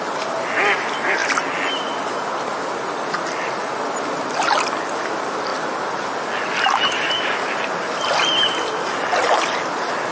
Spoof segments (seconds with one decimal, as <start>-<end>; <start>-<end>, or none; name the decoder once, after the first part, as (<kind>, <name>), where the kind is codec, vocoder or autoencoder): none